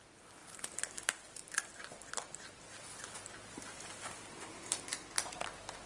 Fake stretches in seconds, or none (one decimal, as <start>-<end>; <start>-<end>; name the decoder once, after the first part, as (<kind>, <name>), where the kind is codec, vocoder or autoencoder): none